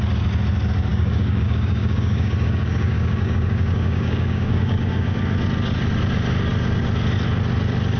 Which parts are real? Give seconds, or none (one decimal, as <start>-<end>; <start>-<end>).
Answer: 0.0-0.9; 5.2-8.0